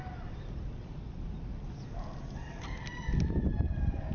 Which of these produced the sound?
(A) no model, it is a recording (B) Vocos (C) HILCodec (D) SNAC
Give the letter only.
A